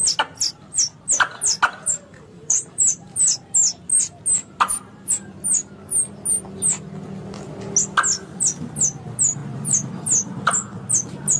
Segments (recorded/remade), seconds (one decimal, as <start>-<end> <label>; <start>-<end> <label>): 0.0-2.1 recorded; 2.1-3.4 remade; 3.4-11.4 recorded